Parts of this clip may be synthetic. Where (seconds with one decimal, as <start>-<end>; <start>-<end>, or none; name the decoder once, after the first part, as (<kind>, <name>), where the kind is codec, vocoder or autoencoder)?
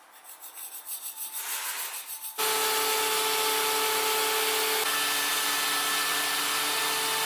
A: none